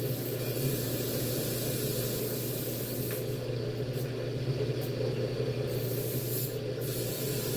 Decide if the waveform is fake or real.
real